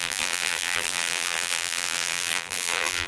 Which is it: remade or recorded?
remade